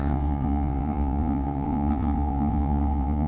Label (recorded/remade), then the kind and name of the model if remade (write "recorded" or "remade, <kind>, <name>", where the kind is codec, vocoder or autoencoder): remade, vocoder, WaveNeXt